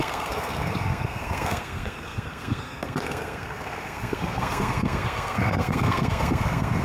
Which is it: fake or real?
fake